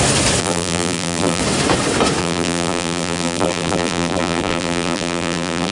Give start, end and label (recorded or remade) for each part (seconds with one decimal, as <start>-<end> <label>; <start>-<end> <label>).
0.0-0.4 recorded; 0.4-1.4 remade; 1.4-2.2 recorded; 2.2-5.7 remade